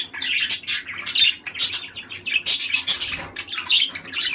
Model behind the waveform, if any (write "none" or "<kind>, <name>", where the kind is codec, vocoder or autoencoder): none